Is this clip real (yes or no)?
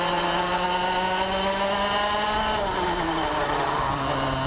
yes